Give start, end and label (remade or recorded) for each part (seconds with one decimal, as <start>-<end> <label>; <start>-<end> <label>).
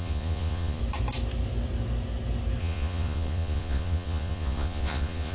0.0-0.8 remade; 0.8-2.6 recorded; 2.6-5.3 remade